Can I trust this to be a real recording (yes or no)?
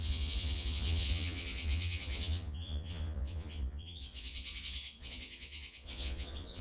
no